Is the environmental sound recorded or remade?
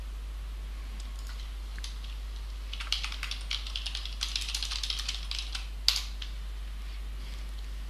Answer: recorded